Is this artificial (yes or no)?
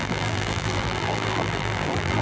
yes